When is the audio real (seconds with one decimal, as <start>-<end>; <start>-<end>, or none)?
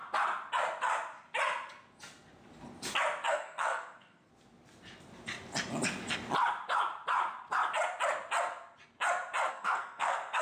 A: 0.0-3.3; 4.3-9.5